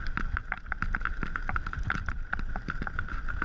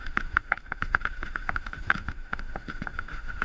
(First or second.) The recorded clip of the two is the first